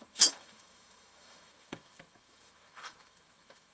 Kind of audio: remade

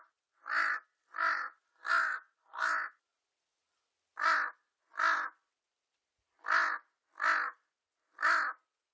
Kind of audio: recorded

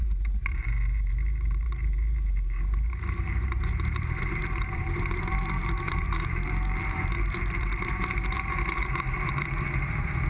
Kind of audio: remade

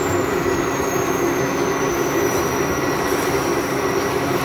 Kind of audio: remade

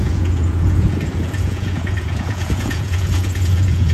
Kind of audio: remade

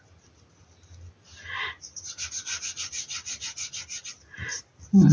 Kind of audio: recorded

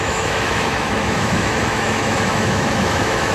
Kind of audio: remade